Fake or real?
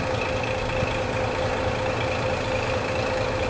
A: real